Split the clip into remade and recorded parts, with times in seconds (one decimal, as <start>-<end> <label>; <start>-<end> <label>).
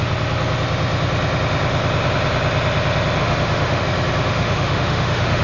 0.0-3.2 recorded; 3.2-3.8 remade; 3.8-4.3 recorded; 4.3-5.4 remade